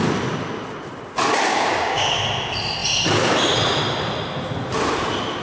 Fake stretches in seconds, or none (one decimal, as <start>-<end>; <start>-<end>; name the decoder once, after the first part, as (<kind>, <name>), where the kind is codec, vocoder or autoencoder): 1.5-2.2 (codec, DAC)